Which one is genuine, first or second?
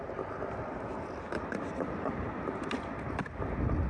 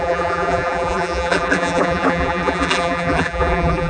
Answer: first